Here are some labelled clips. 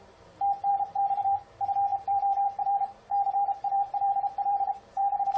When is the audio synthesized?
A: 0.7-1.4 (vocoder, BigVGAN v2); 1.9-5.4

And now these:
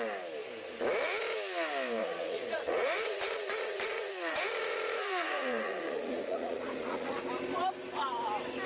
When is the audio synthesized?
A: 2.0-7.2 (vocoder, Vocos)

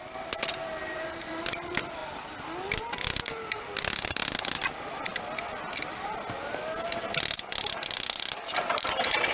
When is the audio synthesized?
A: none

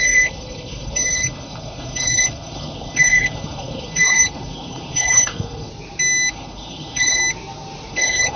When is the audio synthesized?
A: 0.0-5.7 (codec, HILCodec); 6.3-7.2; 7.9-8.4

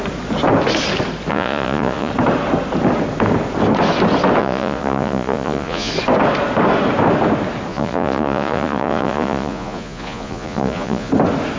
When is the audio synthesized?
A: 1.3-2.1 (vocoder, Vocos); 4.4-5.9; 7.7-11.1

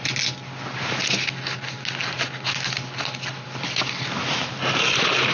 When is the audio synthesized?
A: none

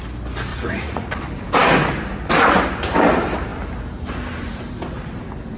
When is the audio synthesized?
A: 0.5-1.1 (vocoder, Vocos)

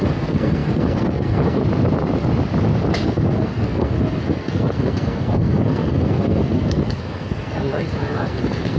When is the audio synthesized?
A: 0.0-1.6 (codec, SNAC); 2.9-8.8